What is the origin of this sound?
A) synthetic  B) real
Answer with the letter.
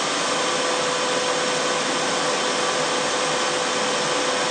B